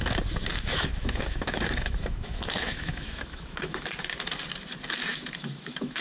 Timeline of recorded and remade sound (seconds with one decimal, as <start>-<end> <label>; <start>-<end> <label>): 0.0-0.5 recorded; 0.5-3.9 remade; 3.9-5.1 recorded; 5.1-6.0 remade